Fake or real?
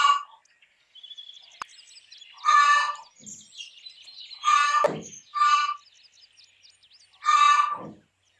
real